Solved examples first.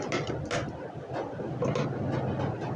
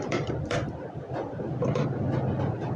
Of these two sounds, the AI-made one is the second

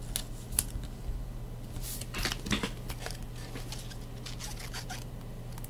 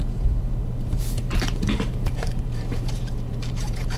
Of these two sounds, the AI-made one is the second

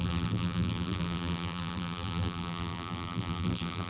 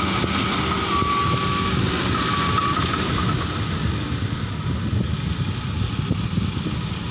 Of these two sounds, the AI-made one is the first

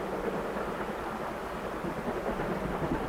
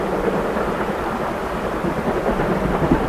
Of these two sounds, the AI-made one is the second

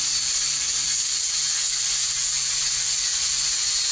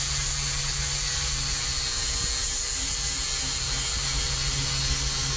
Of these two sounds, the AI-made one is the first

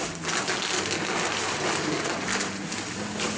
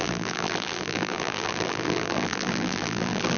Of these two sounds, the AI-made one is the second